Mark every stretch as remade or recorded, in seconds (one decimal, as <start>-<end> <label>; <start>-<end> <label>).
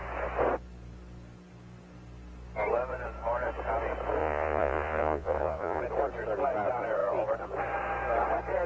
0.0-4.2 recorded; 4.2-5.8 remade; 5.8-8.7 recorded